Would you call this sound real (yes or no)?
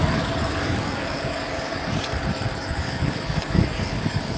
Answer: no